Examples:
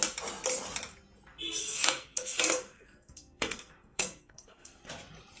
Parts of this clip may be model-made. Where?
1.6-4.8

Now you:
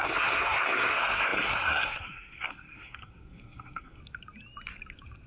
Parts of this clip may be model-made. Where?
0.0-4.0

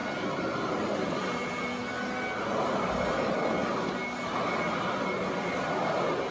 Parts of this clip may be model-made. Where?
none